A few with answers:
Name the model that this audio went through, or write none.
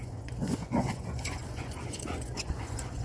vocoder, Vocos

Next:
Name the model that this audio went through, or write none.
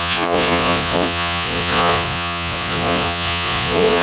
vocoder, Vocos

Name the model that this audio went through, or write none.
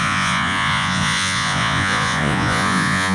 vocoder, Vocos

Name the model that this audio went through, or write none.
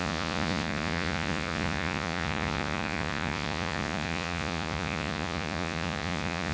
vocoder, Vocos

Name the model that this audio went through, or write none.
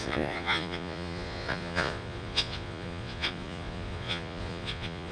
vocoder, Vocos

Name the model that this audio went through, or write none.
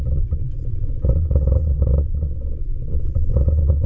vocoder, Vocos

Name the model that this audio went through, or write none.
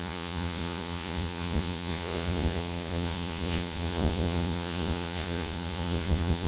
vocoder, Vocos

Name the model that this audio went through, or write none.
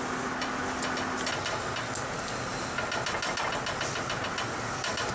none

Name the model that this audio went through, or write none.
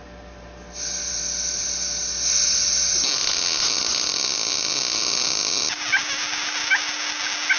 none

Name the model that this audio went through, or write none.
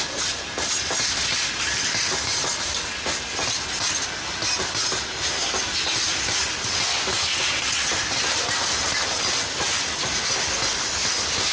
none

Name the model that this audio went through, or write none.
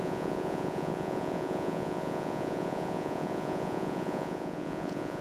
vocoder, Vocos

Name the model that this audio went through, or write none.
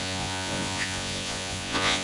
vocoder, Vocos